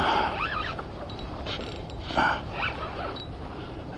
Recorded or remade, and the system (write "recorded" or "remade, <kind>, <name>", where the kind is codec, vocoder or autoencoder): remade, vocoder, BigVGAN v2